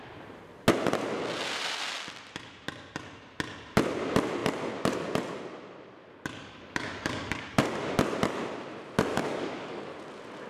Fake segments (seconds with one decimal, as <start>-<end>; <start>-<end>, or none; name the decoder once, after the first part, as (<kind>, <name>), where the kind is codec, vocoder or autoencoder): 6.4-7.6 (codec, DAC); 9.1-9.9